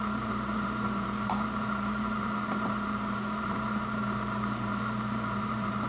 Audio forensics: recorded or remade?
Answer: remade